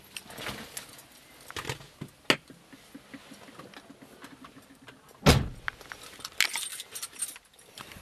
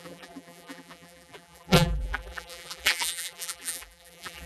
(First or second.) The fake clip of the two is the second